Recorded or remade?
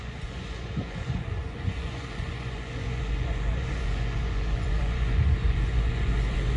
remade